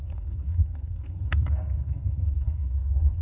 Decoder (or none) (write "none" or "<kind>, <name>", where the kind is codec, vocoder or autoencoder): codec, SNAC